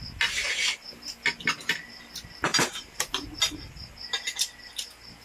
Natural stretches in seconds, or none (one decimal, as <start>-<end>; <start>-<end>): 0.0-2.5; 3.1-5.2